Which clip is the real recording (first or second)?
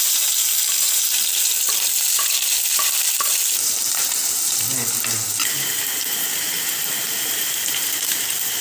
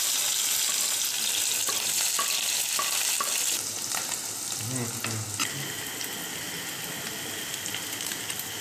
second